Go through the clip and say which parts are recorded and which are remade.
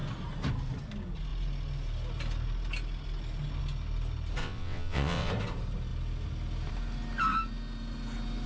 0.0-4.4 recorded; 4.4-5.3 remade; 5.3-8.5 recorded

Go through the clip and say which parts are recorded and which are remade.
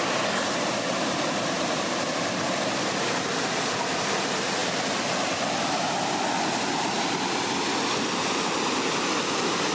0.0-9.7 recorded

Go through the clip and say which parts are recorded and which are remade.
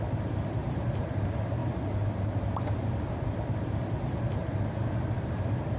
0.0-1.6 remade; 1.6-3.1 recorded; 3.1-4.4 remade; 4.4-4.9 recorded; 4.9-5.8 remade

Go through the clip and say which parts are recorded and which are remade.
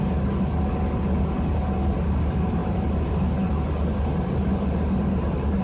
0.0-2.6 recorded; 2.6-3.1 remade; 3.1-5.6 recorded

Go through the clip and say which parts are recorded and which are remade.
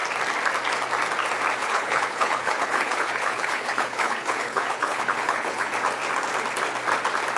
0.0-1.6 recorded; 1.6-5.7 remade; 5.7-7.4 recorded